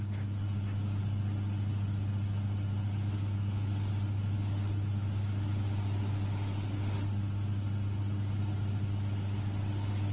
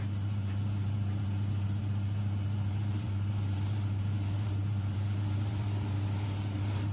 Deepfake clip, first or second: second